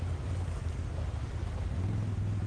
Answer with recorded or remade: recorded